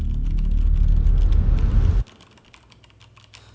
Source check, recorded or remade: recorded